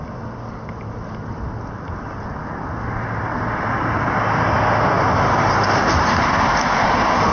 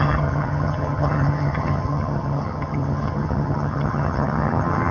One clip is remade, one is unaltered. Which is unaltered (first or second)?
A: first